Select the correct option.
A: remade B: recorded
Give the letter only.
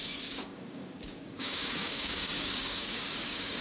A